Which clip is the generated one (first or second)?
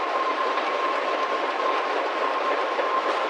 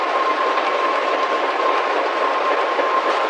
first